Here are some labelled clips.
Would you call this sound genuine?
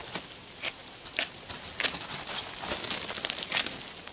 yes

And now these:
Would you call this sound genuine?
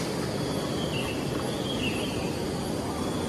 yes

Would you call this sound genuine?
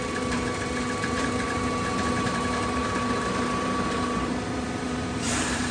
no